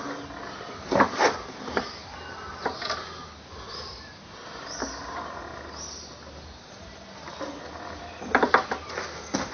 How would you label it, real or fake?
real